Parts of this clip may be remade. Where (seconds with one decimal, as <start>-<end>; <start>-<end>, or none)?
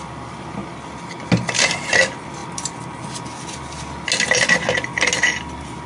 none